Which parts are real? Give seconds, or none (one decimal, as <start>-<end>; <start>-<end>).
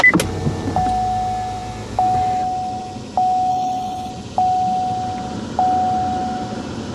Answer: 0.0-3.5; 4.1-6.9